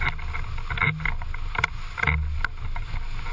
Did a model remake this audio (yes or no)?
no